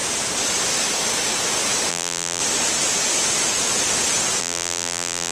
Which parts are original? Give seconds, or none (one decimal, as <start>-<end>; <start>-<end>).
0.0-1.9; 2.4-4.4